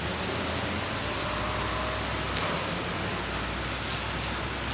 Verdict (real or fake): real